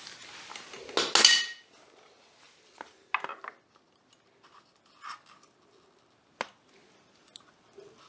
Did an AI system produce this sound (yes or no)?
no